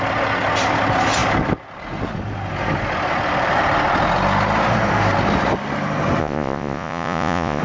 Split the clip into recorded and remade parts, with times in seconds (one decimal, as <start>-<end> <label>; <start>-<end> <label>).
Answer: 0.0-6.2 recorded; 6.2-7.6 remade